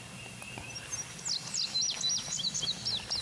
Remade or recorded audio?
recorded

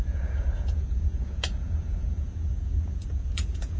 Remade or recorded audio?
remade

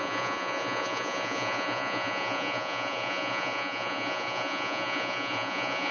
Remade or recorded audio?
remade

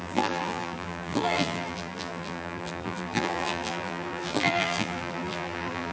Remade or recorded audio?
remade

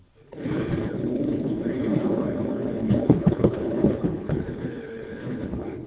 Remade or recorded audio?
remade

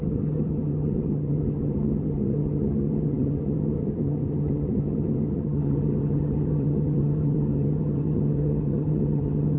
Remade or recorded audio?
remade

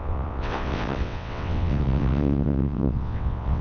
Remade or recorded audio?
remade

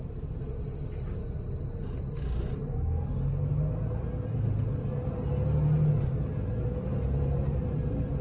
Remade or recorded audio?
recorded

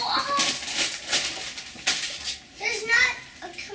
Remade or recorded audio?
recorded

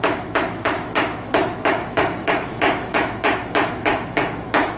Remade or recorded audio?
remade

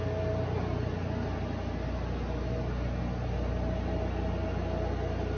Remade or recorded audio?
recorded